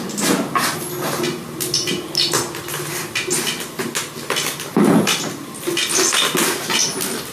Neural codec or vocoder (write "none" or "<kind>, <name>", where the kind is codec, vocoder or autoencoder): none